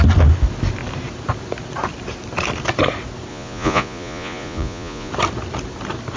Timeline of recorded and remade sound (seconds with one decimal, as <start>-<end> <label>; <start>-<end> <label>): 0.0-3.3 recorded; 3.3-5.1 remade; 5.1-6.2 recorded